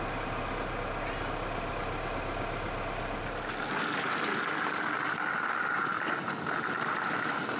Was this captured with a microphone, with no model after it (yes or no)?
yes